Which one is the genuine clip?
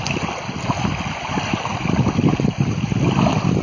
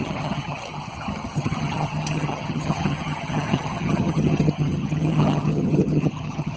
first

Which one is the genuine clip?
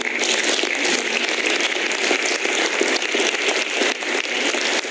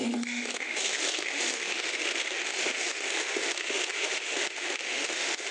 first